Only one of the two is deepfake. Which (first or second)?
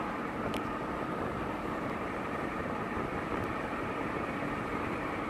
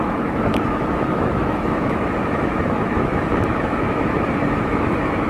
second